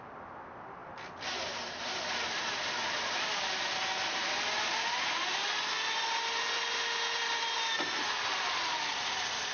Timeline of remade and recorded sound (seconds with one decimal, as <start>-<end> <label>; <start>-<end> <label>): 0.0-9.5 remade